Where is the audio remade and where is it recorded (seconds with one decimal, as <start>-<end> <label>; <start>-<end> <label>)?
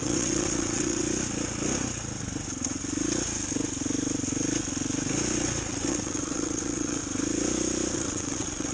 0.0-1.0 remade; 1.0-5.7 recorded; 5.7-7.0 remade; 7.0-7.9 recorded; 7.9-8.7 remade